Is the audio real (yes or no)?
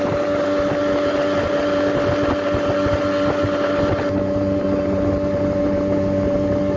yes